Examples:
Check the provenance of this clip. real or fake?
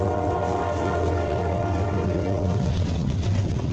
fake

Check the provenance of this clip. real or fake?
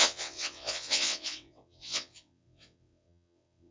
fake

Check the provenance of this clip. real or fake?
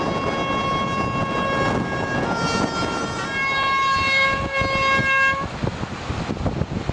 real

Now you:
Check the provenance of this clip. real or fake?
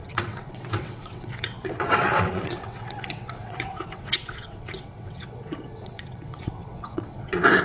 fake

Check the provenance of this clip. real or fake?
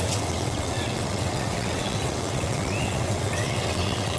fake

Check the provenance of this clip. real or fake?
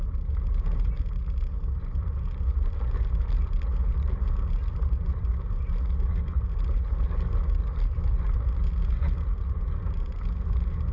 real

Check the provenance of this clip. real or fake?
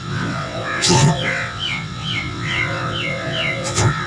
fake